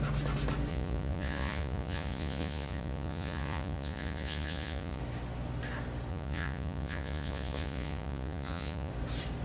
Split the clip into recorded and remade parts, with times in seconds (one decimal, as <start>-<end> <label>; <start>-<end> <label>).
0.0-0.7 recorded; 0.7-5.0 remade; 5.0-6.1 recorded; 6.1-8.9 remade; 8.9-9.4 recorded